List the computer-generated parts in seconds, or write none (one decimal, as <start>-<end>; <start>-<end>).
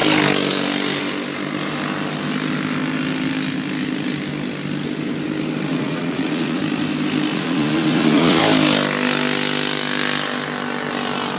5.7-6.6; 7.3-8.4